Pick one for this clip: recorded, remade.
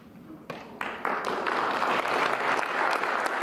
recorded